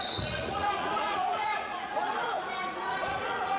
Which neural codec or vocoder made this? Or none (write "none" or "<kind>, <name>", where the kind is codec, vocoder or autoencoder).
vocoder, Vocos